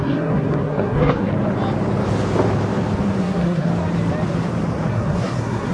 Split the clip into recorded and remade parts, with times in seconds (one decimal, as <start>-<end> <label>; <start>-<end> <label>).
0.0-1.3 remade; 1.3-3.2 recorded; 3.2-3.7 remade; 3.7-4.9 recorded; 4.9-5.7 remade